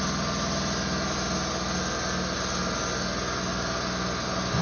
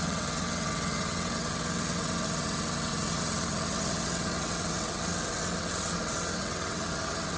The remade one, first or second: second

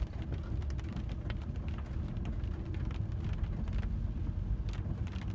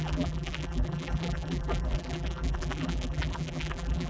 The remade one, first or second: second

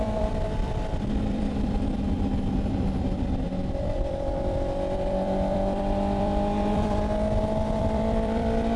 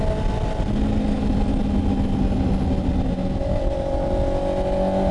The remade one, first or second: first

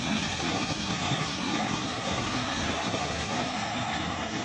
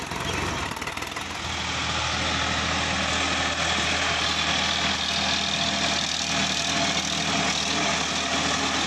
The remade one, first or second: first